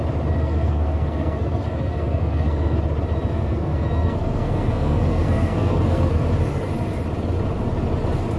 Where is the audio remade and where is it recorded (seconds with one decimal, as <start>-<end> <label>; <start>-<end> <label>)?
0.0-0.4 recorded; 0.4-2.8 remade; 2.8-3.3 recorded; 3.3-6.2 remade; 6.2-8.4 recorded